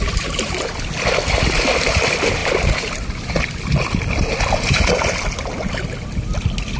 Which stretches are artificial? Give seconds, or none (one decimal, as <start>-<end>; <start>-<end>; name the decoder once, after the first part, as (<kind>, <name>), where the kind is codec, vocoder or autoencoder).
none